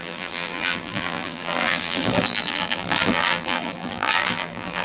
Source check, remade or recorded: remade